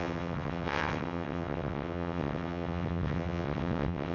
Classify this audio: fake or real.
fake